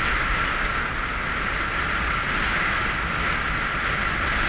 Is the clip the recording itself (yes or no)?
yes